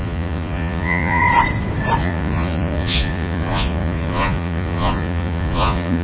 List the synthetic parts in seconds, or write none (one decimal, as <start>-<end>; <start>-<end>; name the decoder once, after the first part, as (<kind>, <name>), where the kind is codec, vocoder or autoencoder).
0.0-1.2 (vocoder, Vocos); 2.0-6.0